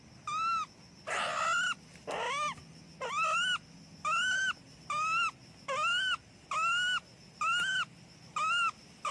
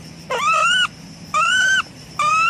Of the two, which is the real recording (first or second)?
first